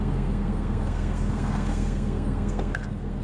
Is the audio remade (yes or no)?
yes